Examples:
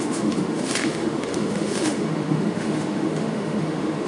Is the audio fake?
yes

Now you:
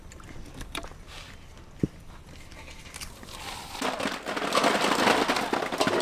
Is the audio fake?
no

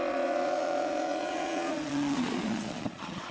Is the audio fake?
yes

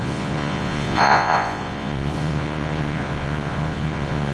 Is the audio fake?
yes